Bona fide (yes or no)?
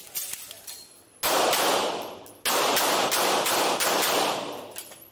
yes